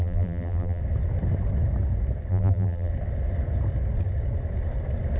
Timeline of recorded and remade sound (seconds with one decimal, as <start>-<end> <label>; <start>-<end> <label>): 0.0-0.8 remade; 0.8-2.3 recorded; 2.3-2.9 remade; 2.9-5.2 recorded